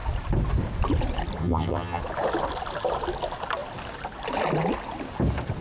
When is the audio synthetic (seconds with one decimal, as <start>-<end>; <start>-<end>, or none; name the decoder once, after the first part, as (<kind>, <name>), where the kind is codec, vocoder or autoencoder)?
1.4-2.0 (vocoder, HiFi-GAN)